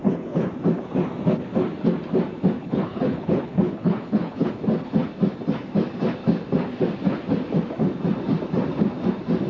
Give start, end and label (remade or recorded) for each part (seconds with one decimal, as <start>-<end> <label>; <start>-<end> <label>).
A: 0.0-0.5 remade; 0.5-2.6 recorded; 2.6-4.5 remade; 4.5-9.5 recorded